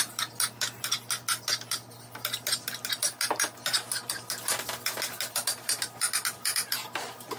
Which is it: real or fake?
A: real